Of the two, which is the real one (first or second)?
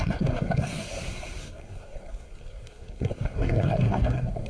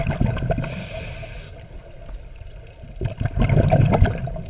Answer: second